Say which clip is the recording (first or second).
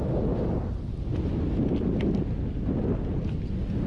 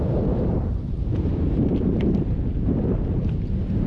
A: first